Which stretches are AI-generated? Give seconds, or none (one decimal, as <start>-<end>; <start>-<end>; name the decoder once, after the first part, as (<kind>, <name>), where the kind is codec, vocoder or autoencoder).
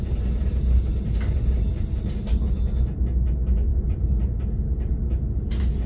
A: none